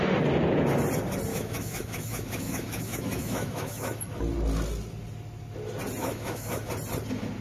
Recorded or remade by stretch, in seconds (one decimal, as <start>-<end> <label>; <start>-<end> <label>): 0.0-1.3 recorded; 1.3-4.2 remade; 4.2-6.0 recorded; 6.0-6.7 remade; 6.7-7.4 recorded